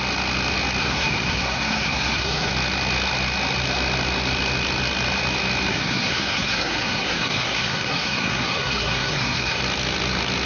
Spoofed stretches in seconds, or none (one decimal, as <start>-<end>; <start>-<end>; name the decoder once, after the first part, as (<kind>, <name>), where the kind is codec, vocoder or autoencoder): 0.8-2.5 (codec, SNAC); 5.7-9.6